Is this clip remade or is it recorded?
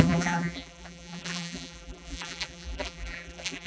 remade